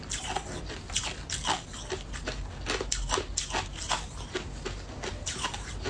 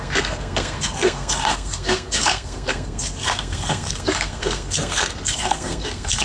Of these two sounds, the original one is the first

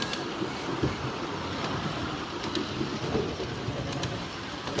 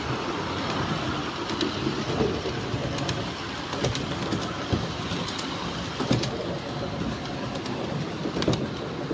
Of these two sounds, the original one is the second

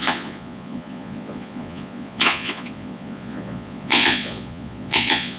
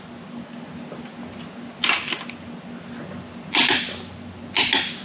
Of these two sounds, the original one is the second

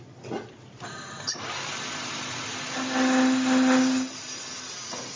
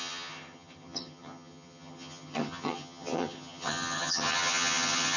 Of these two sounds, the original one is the first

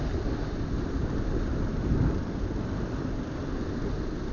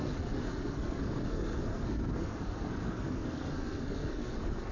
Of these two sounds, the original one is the first